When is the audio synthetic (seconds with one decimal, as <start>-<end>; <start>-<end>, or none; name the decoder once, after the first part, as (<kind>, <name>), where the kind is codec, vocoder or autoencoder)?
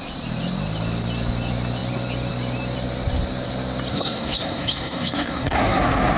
3.9-5.8 (codec, SNAC)